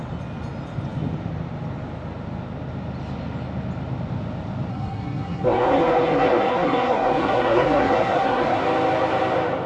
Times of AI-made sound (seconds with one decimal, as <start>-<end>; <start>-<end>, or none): 4.7-8.6